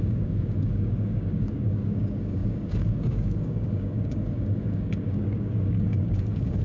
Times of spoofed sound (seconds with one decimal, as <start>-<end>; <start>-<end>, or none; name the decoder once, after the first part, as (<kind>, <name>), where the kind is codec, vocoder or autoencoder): 0.0-6.6 (codec, DAC)